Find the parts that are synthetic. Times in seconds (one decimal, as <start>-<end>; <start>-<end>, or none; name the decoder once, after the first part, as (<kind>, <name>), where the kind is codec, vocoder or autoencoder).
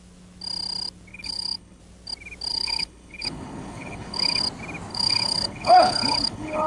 1.1-1.8 (codec, HILCodec); 2.5-4.4; 4.9-6.7